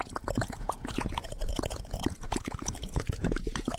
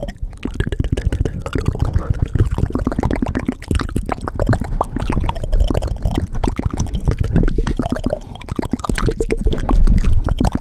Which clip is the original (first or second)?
second